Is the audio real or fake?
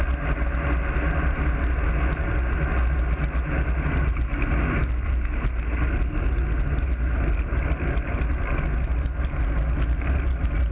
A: real